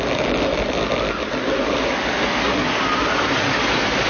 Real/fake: real